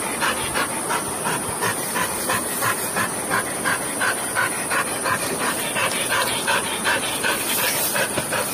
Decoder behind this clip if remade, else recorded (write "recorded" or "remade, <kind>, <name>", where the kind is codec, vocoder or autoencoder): recorded